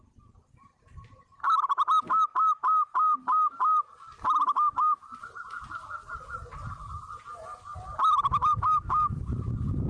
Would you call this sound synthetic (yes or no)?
no